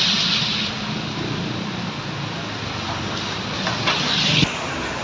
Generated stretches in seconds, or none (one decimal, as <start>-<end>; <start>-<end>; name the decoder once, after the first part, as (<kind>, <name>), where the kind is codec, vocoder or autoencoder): none